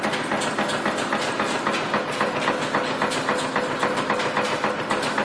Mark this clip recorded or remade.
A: recorded